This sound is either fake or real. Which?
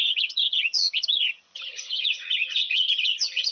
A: fake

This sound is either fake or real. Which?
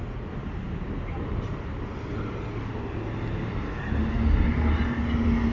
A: real